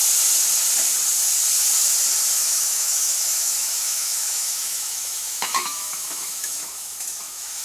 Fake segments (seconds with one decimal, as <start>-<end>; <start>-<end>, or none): 2.4-7.6